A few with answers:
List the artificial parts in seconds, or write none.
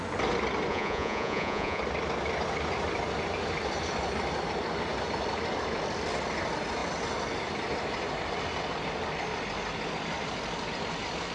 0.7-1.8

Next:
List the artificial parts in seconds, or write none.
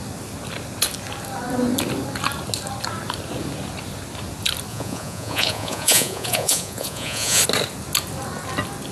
4.7-7.4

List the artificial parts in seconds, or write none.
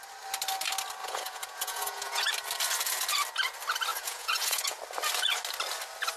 1.0-2.3; 3.9-4.8